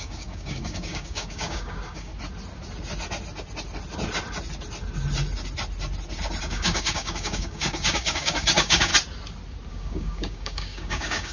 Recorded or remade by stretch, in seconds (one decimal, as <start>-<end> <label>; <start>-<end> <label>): 0.0-2.1 remade; 2.1-6.4 recorded; 6.4-8.9 remade; 8.9-9.7 recorded; 9.7-11.3 remade